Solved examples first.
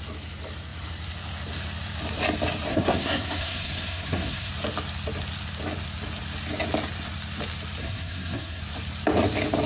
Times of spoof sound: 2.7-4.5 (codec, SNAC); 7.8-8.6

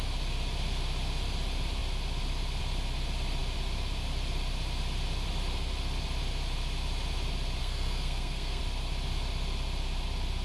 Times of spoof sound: 7.6-8.6 (codec, SNAC)

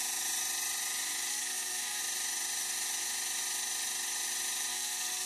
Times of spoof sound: 1.3-2.0 (codec, SNAC); 4.7-5.3

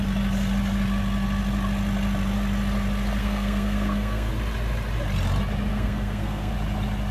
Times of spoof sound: 3.2-4.3 (codec, SNAC); 5.7-6.5

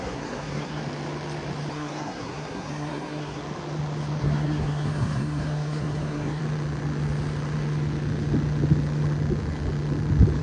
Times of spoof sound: 0.0-0.8 (codec, SNAC); 1.7-3.4; 4.2-6.4